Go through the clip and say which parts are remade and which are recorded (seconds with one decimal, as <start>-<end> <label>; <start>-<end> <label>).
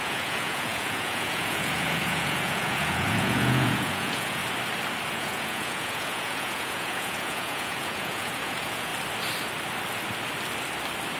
0.0-4.4 remade; 4.4-5.1 recorded; 5.1-8.9 remade; 8.9-11.2 recorded